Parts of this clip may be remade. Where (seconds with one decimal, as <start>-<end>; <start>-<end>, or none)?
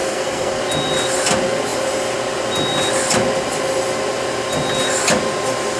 0.0-0.6